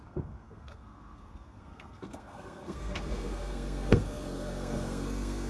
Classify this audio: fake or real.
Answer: fake